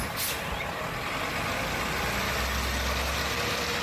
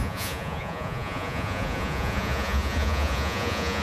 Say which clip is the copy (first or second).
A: second